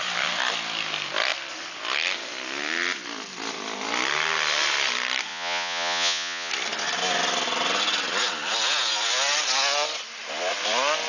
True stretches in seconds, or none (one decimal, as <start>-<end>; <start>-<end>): 0.0-5.3; 6.5-11.1